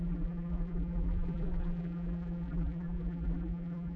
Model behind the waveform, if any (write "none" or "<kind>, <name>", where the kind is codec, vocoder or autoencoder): vocoder, BigVGAN v2